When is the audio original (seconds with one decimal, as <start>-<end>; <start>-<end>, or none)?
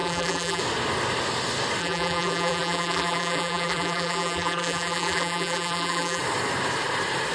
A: 0.6-1.8; 6.2-7.3